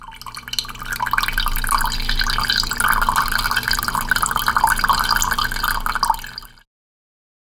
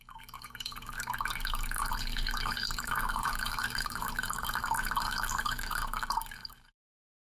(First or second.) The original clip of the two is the first